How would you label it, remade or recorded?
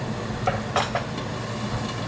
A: recorded